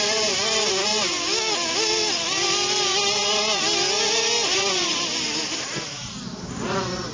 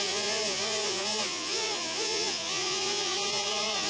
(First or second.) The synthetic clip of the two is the second